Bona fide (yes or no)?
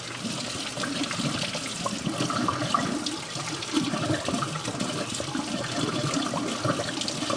yes